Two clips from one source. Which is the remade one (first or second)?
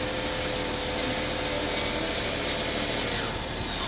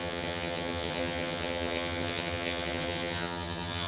second